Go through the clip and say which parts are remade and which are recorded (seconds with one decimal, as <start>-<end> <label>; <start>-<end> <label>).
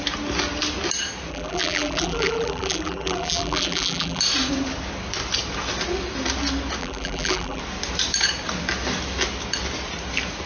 0.0-1.3 recorded; 1.3-4.2 remade; 4.2-6.8 recorded; 6.8-7.6 remade; 7.6-10.5 recorded